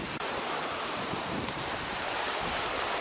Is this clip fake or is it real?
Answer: fake